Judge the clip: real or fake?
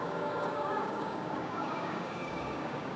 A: fake